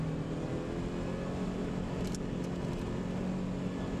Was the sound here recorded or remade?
recorded